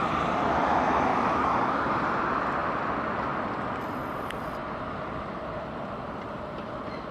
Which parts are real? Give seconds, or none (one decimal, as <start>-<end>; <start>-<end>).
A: 0.0-1.1; 1.9-7.1